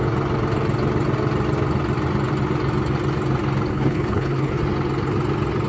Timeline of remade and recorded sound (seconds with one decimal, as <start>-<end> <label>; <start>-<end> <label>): 0.0-3.7 recorded; 3.7-4.6 remade; 4.6-5.7 recorded